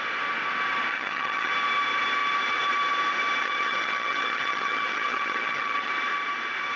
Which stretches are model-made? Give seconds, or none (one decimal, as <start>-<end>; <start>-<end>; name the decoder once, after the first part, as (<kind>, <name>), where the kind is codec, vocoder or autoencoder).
0.9-1.5 (vocoder, HiFi-GAN); 3.4-5.9